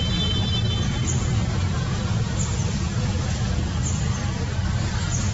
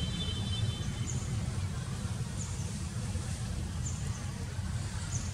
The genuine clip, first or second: first